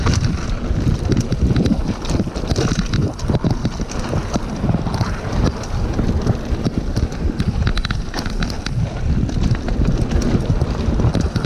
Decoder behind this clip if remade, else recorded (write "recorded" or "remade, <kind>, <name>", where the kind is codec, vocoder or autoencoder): recorded